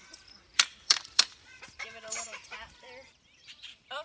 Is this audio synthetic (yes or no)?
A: yes